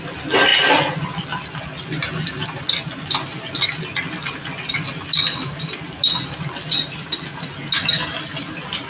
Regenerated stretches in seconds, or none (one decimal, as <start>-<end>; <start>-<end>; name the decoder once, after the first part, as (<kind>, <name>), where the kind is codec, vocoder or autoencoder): none

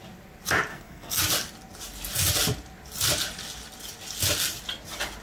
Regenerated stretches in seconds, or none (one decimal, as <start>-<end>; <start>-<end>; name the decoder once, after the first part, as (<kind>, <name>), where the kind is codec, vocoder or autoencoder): 0.7-1.2 (codec, SNAC)

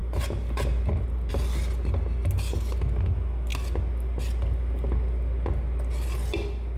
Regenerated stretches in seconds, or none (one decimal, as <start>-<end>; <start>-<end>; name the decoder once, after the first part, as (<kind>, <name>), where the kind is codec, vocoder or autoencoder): none

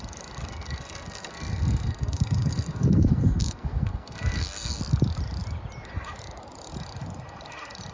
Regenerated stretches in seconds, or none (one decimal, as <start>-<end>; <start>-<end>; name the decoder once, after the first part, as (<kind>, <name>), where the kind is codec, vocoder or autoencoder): 0.4-4.8 (codec, SNAC)

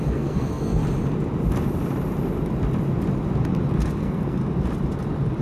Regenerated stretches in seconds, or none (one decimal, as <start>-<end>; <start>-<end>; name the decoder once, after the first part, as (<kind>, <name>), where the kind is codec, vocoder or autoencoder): 0.0-0.8 (codec, SNAC); 4.0-4.4